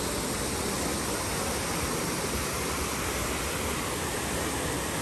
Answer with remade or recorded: recorded